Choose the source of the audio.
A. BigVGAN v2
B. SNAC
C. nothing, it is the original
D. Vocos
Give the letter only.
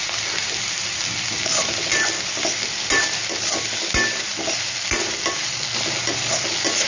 C